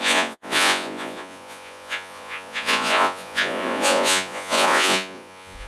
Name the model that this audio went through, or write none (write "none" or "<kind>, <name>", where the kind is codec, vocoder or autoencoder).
vocoder, Vocos